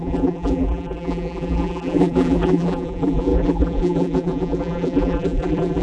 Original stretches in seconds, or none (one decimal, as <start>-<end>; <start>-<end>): none